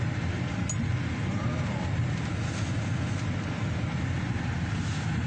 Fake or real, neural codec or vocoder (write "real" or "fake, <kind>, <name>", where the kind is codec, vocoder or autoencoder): real